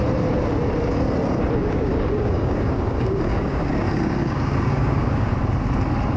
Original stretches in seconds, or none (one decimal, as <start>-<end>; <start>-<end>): 0.0-1.6; 5.3-6.2